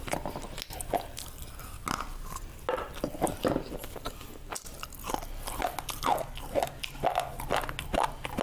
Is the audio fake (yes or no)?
no